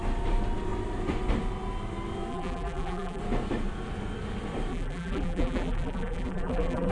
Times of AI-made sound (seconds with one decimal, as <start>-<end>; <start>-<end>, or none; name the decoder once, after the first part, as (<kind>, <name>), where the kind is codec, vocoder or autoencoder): 2.3-3.2 (vocoder, BigVGAN v2); 4.7-6.9